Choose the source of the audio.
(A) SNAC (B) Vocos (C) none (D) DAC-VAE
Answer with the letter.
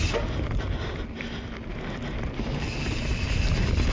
C